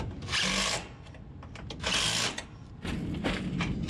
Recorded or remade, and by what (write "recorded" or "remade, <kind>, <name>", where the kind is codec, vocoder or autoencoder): recorded